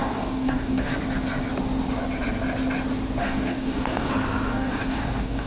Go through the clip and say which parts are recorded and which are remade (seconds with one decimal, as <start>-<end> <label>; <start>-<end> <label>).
0.0-0.9 remade; 0.9-3.2 recorded; 3.2-4.1 remade; 4.1-4.5 recorded; 4.5-5.5 remade